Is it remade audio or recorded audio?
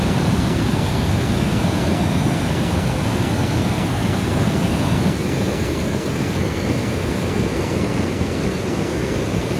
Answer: remade